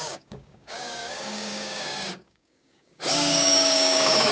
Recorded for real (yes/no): no